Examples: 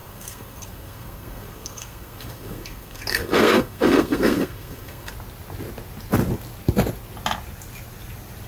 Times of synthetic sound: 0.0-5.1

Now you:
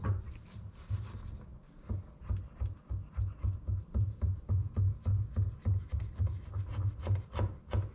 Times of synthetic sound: none

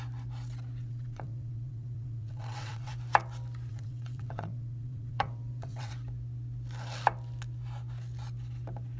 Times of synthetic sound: 0.8-2.9; 3.7-5.9